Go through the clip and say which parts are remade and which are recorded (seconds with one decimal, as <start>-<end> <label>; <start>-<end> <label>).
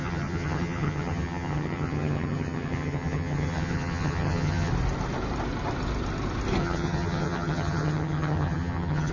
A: 0.0-4.7 remade; 4.7-6.6 recorded; 6.6-9.1 remade